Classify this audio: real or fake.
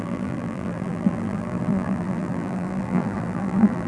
fake